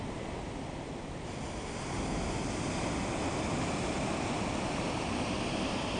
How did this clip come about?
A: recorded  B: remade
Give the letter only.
A